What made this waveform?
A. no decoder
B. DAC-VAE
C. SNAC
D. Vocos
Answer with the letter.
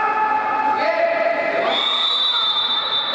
A